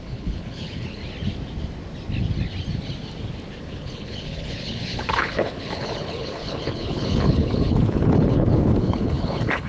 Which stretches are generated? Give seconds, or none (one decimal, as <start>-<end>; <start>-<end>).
0.0-1.0; 3.6-9.7